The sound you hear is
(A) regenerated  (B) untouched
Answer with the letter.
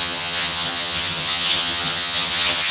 A